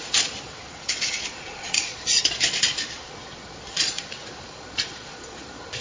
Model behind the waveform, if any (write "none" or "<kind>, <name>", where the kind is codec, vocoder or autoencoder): vocoder, Vocos